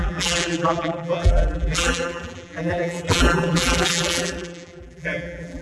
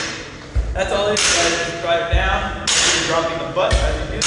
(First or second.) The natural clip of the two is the second